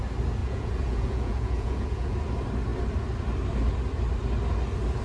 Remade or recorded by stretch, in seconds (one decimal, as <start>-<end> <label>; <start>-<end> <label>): 0.0-0.4 recorded; 0.4-2.2 remade; 2.2-5.0 recorded